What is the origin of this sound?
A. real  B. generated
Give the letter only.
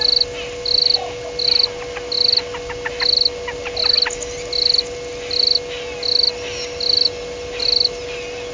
A